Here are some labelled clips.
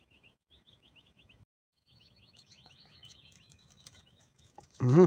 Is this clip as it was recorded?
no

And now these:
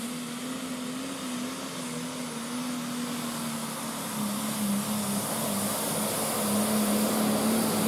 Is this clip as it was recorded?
yes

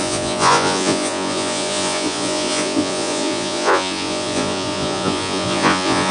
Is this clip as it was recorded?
no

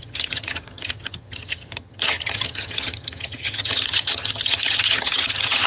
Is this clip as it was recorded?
no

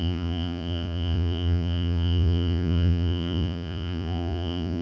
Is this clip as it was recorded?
no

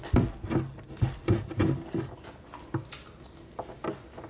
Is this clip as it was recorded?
yes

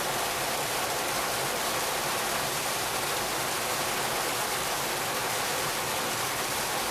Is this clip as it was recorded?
yes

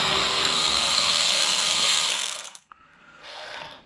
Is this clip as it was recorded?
no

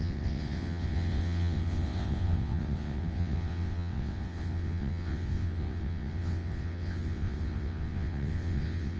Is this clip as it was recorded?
no